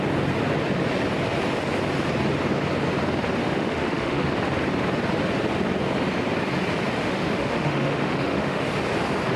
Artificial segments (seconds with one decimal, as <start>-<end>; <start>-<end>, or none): 3.4-4.3; 7.0-8.7